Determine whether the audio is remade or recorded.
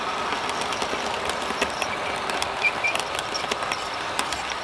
recorded